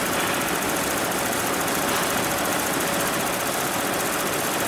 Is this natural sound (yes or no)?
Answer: yes